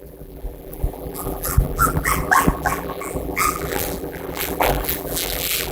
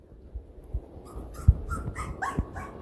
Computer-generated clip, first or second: first